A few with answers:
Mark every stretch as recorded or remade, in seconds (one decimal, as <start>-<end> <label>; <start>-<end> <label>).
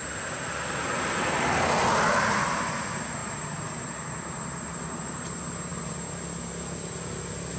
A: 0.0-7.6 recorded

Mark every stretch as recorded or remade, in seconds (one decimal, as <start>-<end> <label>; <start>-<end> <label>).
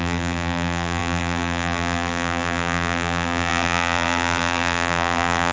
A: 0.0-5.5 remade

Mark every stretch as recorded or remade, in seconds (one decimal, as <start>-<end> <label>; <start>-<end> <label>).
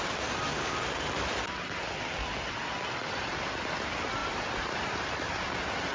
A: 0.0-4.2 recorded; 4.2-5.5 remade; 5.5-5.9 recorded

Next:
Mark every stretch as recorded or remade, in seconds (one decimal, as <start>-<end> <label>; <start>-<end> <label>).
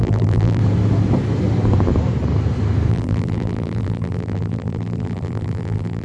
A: 0.0-0.6 remade; 0.6-2.9 recorded; 2.9-6.0 remade